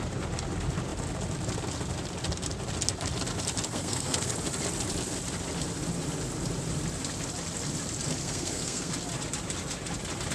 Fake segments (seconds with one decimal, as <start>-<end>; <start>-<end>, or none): 3.7-4.3; 8.2-8.9